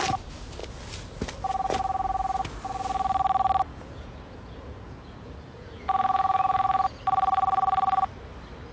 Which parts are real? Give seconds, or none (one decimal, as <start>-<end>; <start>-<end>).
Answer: 0.0-3.7; 7.0-8.7